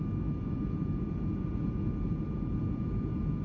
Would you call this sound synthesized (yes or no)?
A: no